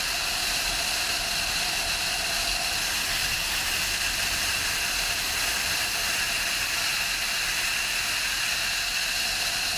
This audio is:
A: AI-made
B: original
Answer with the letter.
B